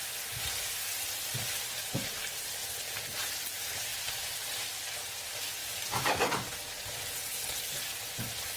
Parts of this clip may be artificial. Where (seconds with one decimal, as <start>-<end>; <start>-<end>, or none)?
0.0-8.6